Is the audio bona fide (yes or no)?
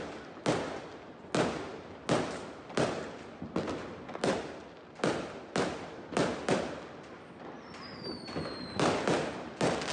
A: yes